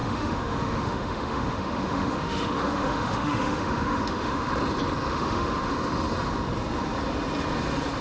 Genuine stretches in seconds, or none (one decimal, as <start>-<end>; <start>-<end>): 4.5-5.1; 5.7-8.0